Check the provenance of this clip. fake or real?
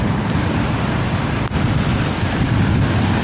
fake